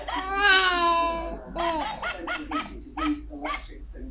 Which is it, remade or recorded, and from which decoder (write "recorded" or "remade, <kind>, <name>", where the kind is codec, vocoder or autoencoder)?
recorded